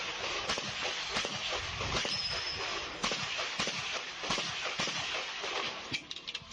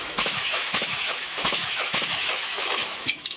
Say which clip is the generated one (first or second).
second